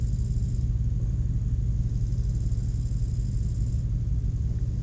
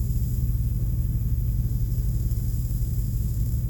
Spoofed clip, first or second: second